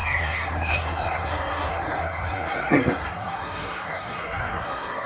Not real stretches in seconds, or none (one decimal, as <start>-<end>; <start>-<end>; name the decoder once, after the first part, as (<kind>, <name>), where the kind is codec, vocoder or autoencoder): 0.0-5.1 (codec, SNAC)